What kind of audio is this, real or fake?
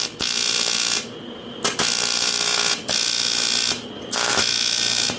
real